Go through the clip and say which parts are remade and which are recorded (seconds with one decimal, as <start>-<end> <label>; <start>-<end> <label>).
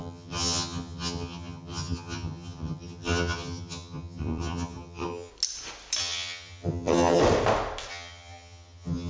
0.0-5.3 remade; 5.3-6.0 recorded; 6.0-7.2 remade; 7.2-7.9 recorded; 7.9-9.1 remade